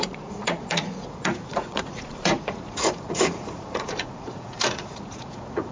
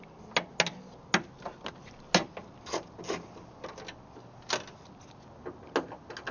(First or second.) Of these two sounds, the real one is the second